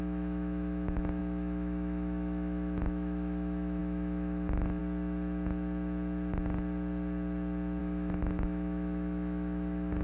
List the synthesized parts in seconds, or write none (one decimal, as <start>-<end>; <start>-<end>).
0.0-4.8; 7.8-10.0